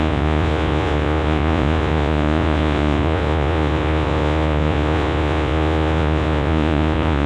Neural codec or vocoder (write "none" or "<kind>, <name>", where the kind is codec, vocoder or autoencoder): vocoder, Vocos